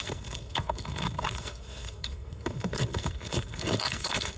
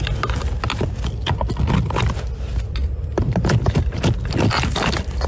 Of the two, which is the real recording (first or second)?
second